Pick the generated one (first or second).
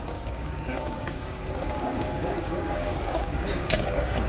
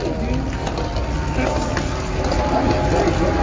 first